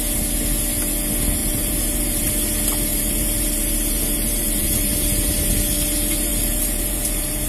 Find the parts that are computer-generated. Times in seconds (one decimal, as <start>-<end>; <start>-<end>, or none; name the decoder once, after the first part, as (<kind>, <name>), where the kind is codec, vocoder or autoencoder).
1.4-2.3 (vocoder, BigVGAN v2); 2.9-4.9; 6.3-7.5